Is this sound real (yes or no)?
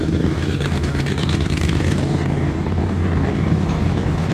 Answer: no